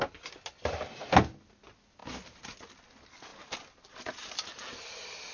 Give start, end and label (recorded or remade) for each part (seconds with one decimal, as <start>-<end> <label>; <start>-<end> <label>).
0.0-5.3 recorded